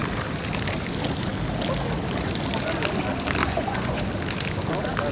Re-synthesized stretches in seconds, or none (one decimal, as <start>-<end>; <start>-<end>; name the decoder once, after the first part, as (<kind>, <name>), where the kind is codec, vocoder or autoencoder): 3.4-4.0 (vocoder, Vocos)

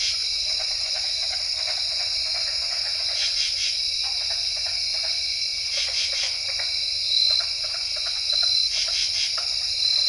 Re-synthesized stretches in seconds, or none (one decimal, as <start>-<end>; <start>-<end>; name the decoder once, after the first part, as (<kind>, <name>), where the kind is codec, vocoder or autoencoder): 0.0-1.2 (vocoder, Vocos); 1.8-8.7